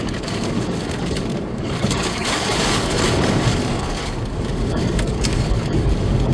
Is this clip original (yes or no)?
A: no